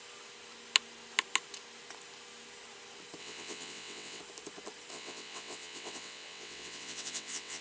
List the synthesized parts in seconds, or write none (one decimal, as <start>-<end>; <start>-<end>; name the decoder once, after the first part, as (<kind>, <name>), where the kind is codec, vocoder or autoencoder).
3.2-4.2 (vocoder, WaveNeXt); 4.9-7.6

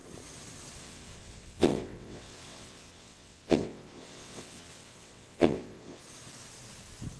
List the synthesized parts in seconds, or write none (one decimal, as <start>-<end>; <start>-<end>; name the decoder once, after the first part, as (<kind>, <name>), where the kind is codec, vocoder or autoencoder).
0.8-6.0 (vocoder, WaveNeXt)

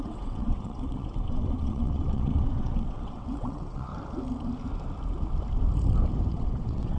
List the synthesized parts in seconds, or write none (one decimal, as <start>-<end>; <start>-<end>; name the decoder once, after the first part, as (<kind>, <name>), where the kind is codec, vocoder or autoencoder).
0.0-3.9 (vocoder, WaveNeXt); 6.3-7.0

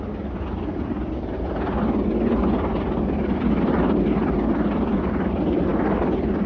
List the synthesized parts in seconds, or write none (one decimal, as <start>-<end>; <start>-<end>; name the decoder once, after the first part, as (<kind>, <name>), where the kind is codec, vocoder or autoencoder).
none